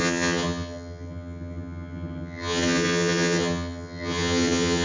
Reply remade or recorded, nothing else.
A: remade